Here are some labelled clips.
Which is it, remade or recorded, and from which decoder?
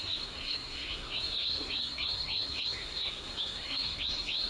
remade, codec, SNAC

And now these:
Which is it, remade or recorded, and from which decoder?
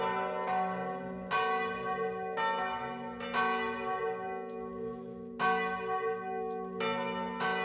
recorded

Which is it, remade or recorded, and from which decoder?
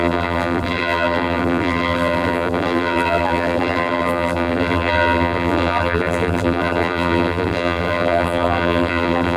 remade, vocoder, BigVGAN v2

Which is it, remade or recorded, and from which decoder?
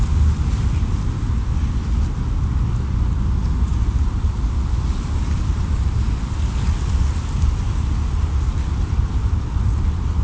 recorded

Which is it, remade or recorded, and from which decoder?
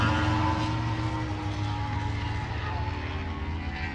recorded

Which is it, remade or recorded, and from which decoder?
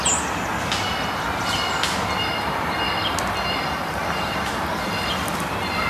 recorded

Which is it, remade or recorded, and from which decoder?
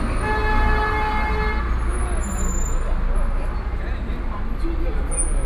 recorded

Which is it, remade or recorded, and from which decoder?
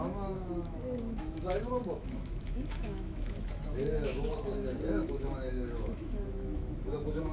remade, autoencoder, DAC-VAE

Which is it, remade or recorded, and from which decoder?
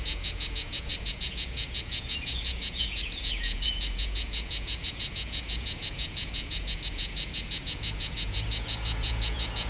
remade, vocoder, Vocos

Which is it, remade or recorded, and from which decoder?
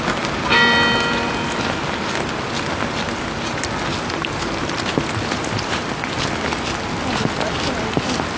recorded